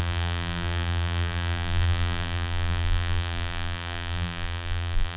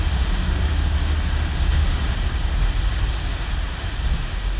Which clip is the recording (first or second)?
second